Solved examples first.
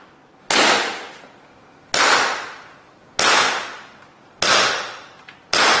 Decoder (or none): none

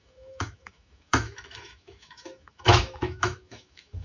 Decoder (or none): autoencoder, DAC-VAE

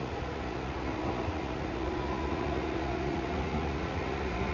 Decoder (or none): vocoder, Vocos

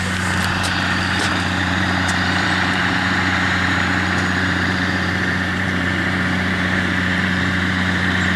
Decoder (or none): vocoder, BigVGAN v2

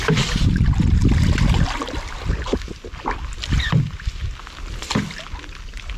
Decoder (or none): none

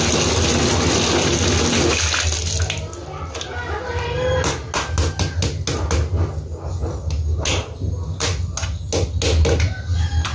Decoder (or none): none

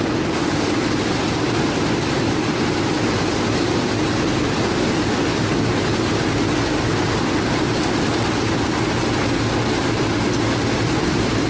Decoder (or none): none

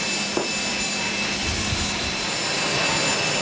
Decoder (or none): none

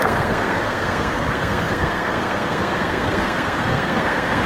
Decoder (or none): codec, SNAC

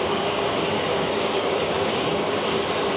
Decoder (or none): codec, DAC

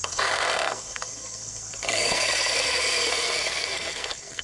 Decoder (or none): codec, SNAC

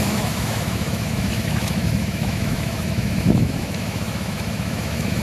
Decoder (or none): autoencoder, DAC-VAE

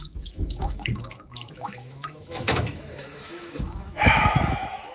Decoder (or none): autoencoder, DAC-VAE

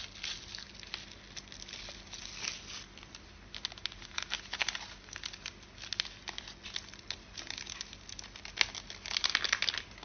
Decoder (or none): none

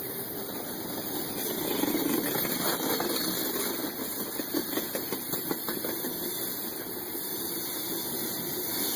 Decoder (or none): none